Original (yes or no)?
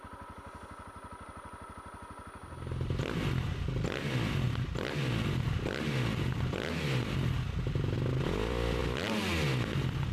yes